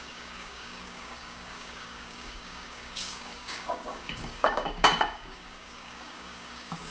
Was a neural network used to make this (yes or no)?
yes